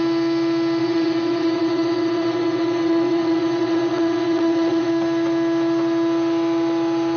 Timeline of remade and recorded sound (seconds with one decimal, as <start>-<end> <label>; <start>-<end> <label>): 0.0-0.8 recorded; 0.8-4.9 remade; 4.9-7.2 recorded